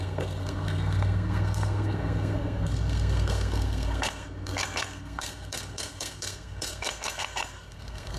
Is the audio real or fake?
fake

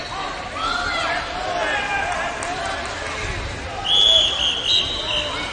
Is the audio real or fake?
real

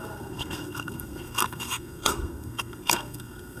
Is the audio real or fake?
fake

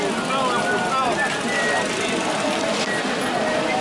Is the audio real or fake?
real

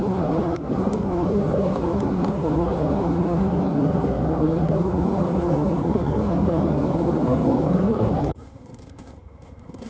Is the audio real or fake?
fake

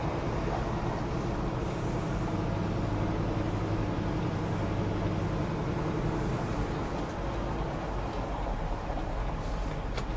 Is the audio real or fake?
real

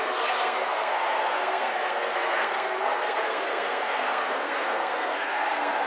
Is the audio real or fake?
fake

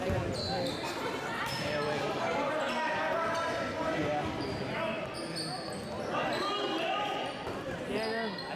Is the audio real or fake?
real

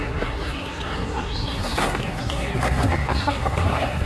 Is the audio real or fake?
fake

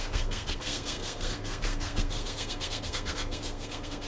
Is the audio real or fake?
fake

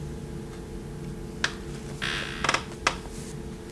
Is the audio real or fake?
real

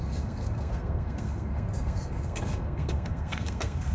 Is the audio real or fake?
fake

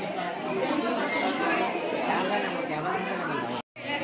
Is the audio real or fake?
real